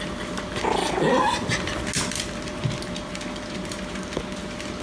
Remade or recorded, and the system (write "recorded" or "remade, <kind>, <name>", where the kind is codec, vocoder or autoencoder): recorded